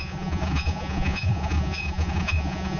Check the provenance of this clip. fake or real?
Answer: fake